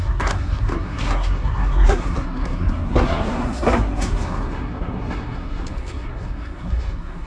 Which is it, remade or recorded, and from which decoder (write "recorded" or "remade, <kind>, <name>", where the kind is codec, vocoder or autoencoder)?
remade, codec, SNAC